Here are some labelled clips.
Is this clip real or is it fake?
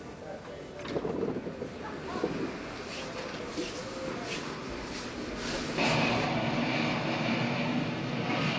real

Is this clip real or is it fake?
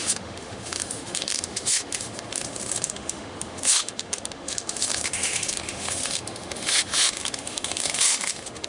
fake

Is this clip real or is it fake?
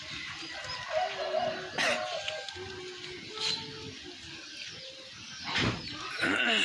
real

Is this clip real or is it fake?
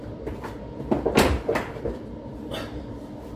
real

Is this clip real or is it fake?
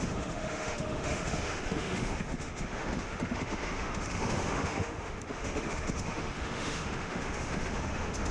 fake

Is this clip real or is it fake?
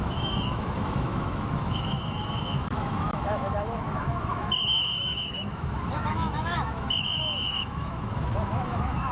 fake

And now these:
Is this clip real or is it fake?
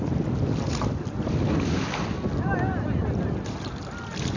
real